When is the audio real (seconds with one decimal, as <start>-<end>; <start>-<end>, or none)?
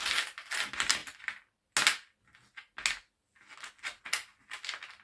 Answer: 0.0-5.0